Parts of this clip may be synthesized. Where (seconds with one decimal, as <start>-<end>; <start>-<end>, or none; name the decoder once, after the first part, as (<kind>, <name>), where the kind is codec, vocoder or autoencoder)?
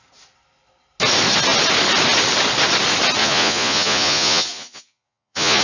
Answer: 3.2-5.6 (vocoder, Vocos)